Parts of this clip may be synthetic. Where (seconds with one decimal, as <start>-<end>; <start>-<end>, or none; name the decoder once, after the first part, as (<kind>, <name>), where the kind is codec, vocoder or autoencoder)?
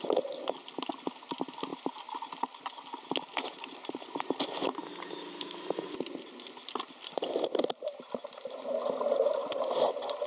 none